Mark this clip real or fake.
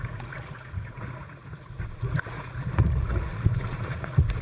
fake